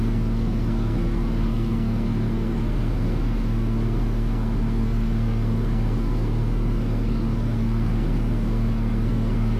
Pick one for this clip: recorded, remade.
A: remade